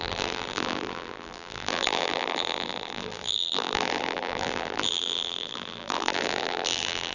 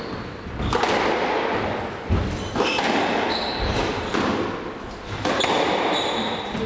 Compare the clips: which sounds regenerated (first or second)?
first